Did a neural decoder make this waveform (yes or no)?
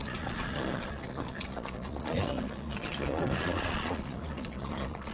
yes